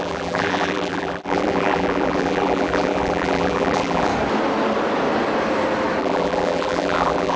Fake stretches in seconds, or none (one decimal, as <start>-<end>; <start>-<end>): 0.0-4.1; 6.0-7.4